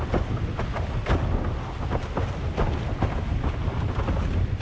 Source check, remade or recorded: recorded